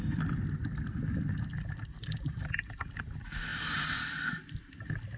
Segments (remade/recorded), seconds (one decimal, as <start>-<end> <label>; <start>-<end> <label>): 0.0-5.2 recorded